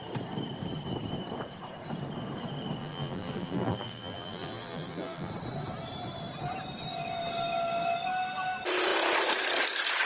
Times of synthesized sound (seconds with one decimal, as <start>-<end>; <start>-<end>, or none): 2.8-5.3

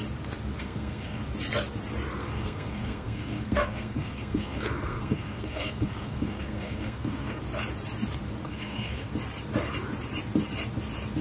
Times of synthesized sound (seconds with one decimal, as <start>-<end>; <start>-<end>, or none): 0.6-1.2; 2.2-7.4; 8.4-9.1